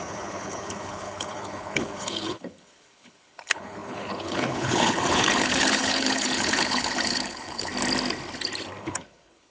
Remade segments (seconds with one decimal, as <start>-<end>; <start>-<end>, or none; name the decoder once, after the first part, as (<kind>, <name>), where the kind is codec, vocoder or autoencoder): 0.0-7.7 (codec, HILCodec); 8.8-9.5